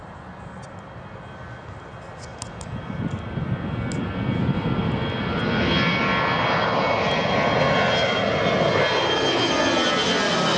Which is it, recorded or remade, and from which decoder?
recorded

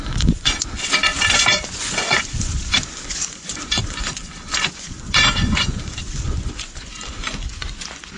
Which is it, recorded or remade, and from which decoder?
remade, vocoder, Vocos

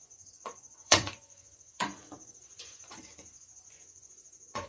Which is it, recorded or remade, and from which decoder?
remade, vocoder, Vocos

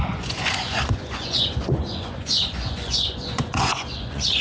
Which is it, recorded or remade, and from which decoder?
remade, vocoder, Vocos